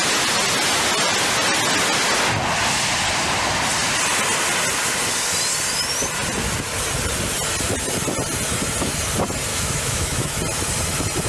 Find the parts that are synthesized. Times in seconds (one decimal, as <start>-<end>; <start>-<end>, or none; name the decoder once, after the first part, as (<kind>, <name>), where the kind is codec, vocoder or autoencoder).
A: 9.5-10.4 (autoencoder, DAC-VAE)